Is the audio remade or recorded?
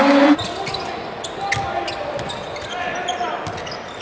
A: recorded